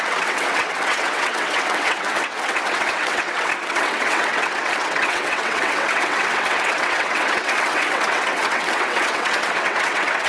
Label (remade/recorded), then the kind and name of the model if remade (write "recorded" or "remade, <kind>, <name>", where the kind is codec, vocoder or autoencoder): remade, vocoder, WaveNeXt